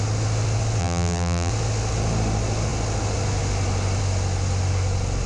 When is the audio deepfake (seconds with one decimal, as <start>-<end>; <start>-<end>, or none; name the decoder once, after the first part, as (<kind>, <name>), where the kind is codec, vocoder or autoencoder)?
0.8-1.5 (vocoder, BigVGAN v2)